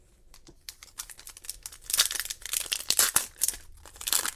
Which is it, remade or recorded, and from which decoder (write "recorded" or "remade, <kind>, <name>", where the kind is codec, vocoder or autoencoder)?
recorded